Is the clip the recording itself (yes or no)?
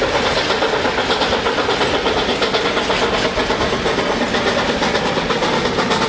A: yes